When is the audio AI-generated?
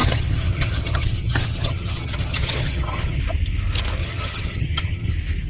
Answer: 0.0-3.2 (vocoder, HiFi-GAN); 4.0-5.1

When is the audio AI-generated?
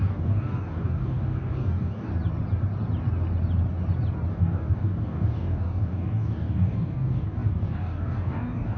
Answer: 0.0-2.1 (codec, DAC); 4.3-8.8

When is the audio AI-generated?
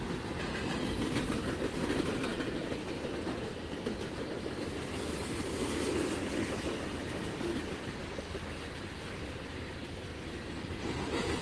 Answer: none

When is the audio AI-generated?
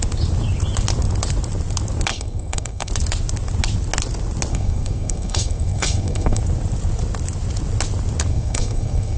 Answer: 2.1-2.9 (codec, SNAC); 4.5-6.4; 8.3-9.2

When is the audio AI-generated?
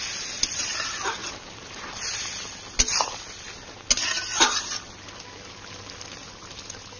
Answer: 1.2-2.1 (vocoder, BigVGAN v2)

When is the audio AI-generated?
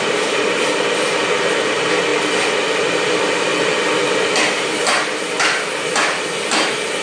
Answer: 0.0-2.1 (vocoder, BigVGAN v2); 2.9-3.5; 6.3-7.0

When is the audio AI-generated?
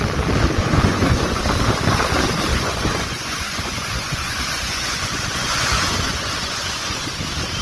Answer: 0.6-1.4 (vocoder, Vocos); 2.5-7.1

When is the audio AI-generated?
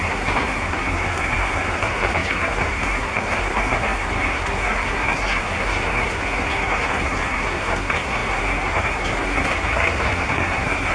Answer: 0.0-10.9 (codec, SNAC)